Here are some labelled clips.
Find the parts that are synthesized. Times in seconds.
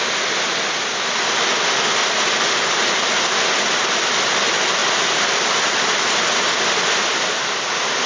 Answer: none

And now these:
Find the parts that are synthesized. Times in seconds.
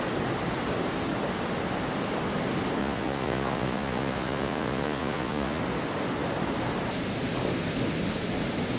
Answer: 2.8-5.6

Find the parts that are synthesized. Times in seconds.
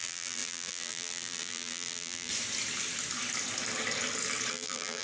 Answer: 0.0-2.3; 4.5-5.0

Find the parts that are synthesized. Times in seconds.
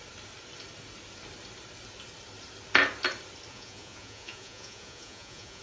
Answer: 3.5-5.6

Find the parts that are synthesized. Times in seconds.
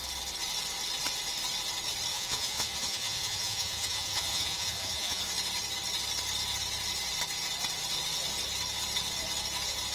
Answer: 2.1-5.2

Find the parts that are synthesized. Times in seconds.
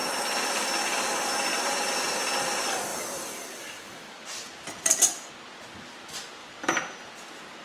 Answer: 2.9-5.3; 6.4-7.1